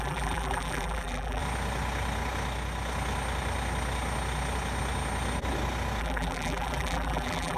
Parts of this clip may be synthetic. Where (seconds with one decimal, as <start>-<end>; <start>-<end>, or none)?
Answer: 0.0-1.4; 6.0-7.6